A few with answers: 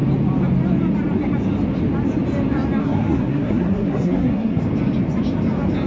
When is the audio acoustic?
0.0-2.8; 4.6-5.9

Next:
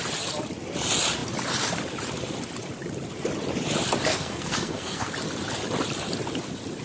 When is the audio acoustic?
0.0-4.1; 5.1-6.8